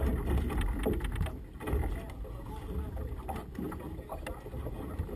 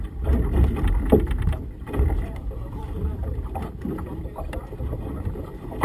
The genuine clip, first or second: first